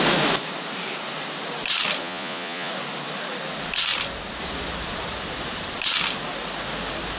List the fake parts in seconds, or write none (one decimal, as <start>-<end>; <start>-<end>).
2.0-2.7